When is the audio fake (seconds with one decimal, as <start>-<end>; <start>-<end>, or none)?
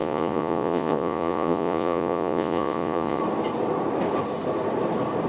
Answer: 0.0-3.2